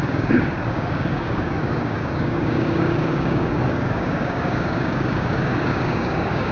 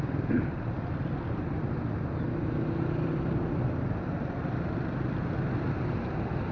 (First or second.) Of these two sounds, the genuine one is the second